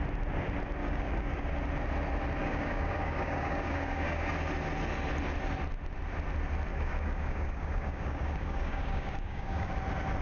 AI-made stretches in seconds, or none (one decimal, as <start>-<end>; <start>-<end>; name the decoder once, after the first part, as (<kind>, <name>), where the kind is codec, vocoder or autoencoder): 0.8-1.4 (codec, DAC); 2.4-4.3; 6.7-9.7

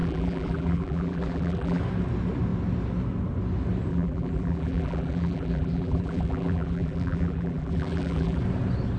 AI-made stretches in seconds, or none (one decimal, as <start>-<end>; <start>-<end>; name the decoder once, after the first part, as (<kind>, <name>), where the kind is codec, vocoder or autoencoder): 0.0-1.8 (vocoder, BigVGAN v2); 3.9-8.4

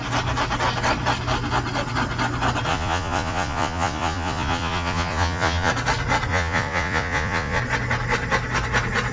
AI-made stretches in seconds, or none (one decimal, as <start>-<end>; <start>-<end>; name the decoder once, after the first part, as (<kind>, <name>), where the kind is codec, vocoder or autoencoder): 2.7-5.7 (vocoder, Vocos); 6.3-7.6

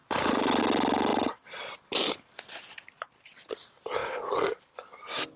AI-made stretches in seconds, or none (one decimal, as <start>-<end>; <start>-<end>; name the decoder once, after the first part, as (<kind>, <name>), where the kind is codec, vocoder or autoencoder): none

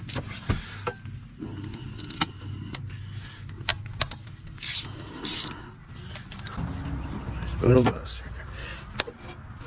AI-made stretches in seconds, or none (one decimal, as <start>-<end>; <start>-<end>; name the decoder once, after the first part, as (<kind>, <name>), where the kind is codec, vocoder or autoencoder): none

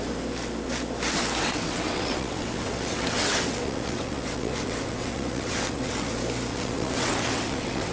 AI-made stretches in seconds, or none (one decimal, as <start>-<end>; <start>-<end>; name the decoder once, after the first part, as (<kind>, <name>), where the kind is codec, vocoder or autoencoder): 1.4-6.1 (vocoder, WaveNeXt); 6.5-7.9

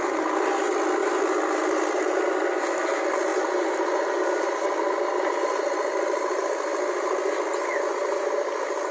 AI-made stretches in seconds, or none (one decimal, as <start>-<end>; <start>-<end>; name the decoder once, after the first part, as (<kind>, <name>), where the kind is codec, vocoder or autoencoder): none

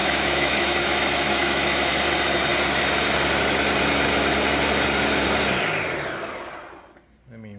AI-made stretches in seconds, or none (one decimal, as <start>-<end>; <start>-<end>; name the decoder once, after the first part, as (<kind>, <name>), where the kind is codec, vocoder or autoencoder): 0.0-2.1 (autoencoder, DAC-VAE)